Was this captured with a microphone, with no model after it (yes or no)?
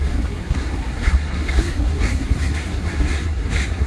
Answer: no